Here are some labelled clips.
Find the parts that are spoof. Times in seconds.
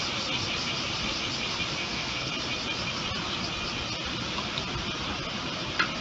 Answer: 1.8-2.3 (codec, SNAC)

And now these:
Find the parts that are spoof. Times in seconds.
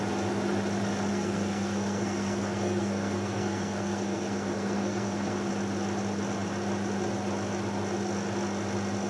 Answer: 1.1-5.5 (codec, SNAC)